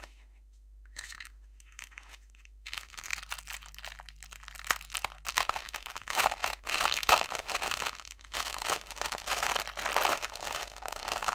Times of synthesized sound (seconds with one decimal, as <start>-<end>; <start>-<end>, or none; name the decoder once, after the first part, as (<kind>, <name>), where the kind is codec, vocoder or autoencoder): 0.0-3.1 (autoencoder, DAC-VAE); 5.3-9.5; 10.1-11.3